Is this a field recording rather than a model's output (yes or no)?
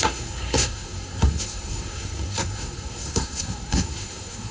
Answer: no